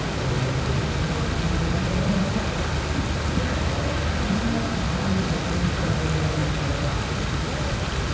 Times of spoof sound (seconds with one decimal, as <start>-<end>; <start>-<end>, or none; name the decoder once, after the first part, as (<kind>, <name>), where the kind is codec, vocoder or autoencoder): none